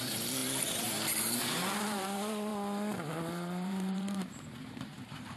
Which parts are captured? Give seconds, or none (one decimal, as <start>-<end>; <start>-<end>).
2.5-3.1